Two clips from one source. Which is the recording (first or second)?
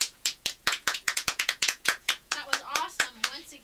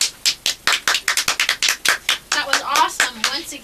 second